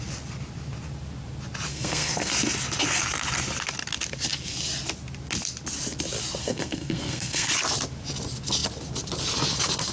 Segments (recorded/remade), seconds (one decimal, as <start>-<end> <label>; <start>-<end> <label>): 0.0-1.7 recorded; 1.7-2.3 remade; 2.3-6.4 recorded; 6.4-7.5 remade; 7.5-9.9 recorded

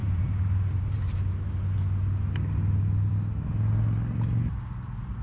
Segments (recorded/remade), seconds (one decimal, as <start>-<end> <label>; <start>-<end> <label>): 0.0-5.2 recorded

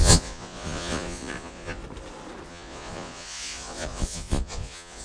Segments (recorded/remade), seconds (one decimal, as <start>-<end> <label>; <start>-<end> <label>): 0.0-1.8 remade; 1.8-2.5 recorded; 2.5-5.0 remade

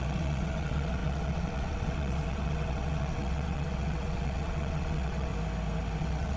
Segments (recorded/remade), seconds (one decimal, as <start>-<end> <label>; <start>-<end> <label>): 0.0-5.3 remade; 5.3-6.0 recorded; 6.0-6.4 remade

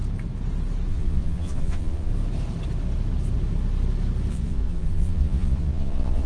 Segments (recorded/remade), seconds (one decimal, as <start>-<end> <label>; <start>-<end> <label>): 0.0-0.9 recorded; 0.9-2.1 remade; 2.1-4.3 recorded; 4.3-6.3 remade

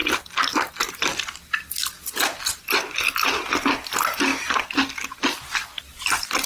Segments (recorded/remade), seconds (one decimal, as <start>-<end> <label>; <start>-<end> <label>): 0.0-6.5 recorded

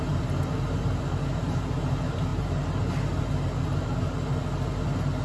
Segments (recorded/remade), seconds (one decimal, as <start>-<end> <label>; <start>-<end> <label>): 0.0-5.2 recorded

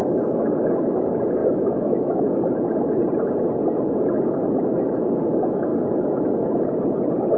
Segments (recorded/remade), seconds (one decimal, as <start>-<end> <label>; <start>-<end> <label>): 0.0-3.0 remade; 3.0-4.1 recorded; 4.1-5.7 remade; 5.7-7.4 recorded